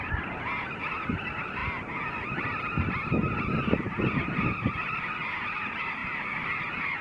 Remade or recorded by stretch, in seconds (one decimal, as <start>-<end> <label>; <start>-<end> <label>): 0.0-7.0 recorded